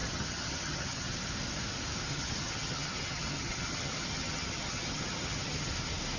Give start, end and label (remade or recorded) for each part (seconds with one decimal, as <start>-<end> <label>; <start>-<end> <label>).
0.0-1.3 remade; 1.3-2.1 recorded; 2.1-5.7 remade; 5.7-6.2 recorded

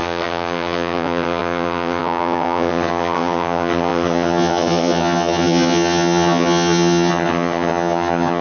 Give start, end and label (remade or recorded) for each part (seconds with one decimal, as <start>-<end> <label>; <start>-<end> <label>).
0.0-8.4 remade